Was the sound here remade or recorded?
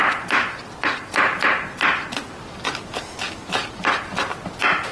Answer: recorded